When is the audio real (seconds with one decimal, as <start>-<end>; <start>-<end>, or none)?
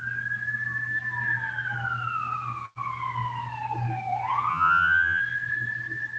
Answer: 0.0-4.5; 5.2-6.2